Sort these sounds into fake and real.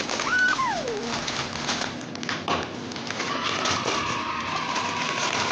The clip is real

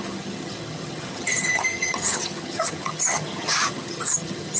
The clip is fake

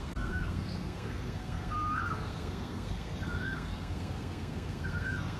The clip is fake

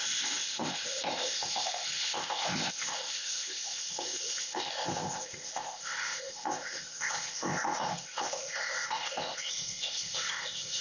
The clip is fake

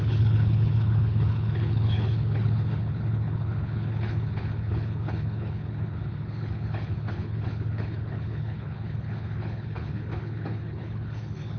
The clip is fake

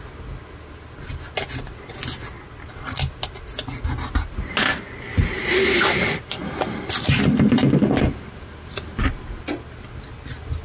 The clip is real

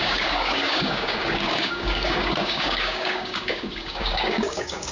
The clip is fake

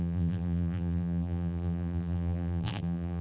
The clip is fake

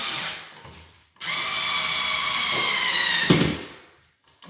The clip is real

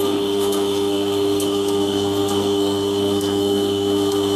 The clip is fake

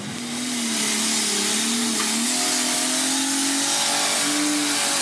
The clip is real